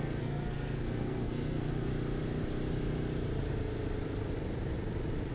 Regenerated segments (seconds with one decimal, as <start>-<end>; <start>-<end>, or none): 0.0-1.9